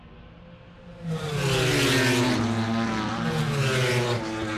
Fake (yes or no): no